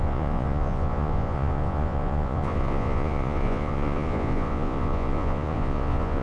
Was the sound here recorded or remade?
remade